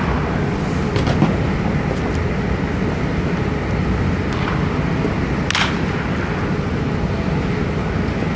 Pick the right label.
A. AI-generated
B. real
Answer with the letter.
B